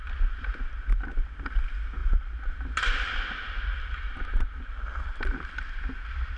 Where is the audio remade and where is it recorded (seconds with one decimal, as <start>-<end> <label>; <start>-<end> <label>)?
0.0-6.4 recorded